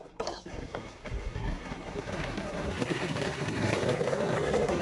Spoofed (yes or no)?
yes